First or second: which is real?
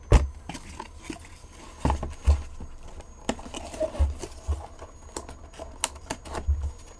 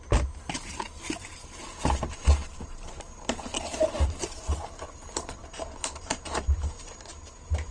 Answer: first